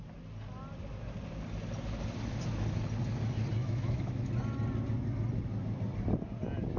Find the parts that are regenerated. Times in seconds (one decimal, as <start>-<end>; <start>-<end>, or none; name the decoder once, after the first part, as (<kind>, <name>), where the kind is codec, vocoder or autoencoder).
3.6-4.3 (autoencoder, DAC-VAE)